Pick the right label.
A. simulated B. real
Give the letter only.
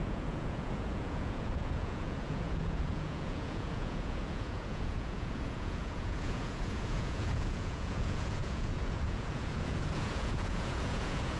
A